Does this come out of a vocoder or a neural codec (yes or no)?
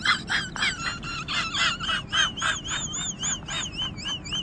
no